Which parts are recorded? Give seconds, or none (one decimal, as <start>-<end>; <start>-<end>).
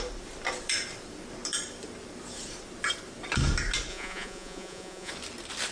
0.0-3.9; 5.1-5.7